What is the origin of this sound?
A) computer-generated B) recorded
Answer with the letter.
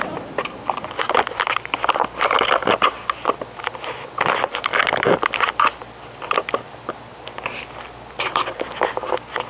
B